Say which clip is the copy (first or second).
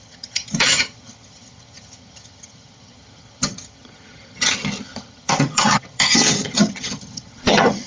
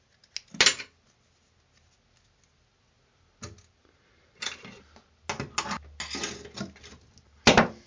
first